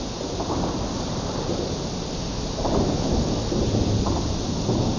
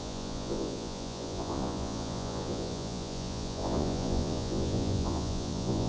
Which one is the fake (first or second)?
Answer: second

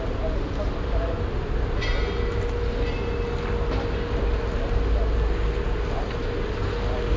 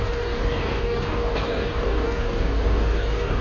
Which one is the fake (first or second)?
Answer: second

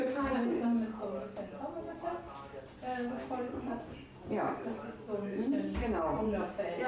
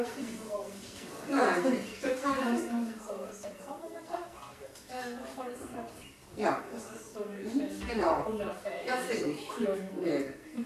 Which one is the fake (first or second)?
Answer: second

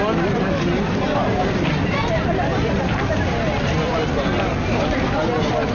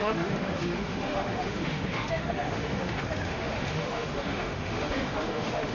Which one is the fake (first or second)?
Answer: second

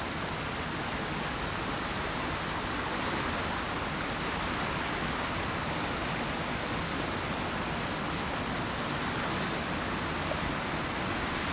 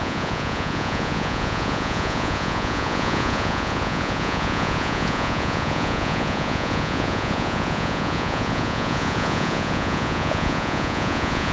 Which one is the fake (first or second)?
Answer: second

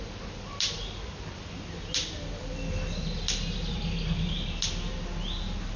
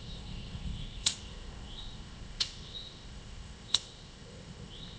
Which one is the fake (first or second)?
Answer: second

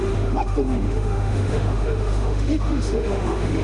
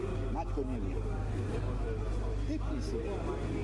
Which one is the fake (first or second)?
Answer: first